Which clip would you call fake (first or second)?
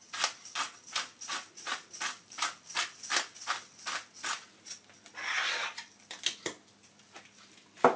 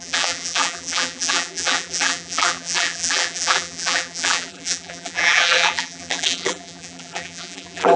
second